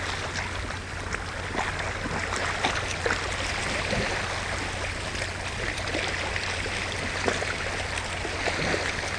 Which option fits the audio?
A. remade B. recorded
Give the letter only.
B